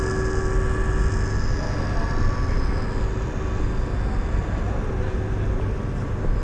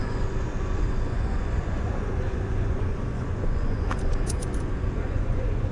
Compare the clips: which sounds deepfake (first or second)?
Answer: second